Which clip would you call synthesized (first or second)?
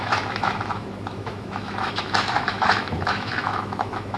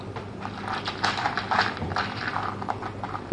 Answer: first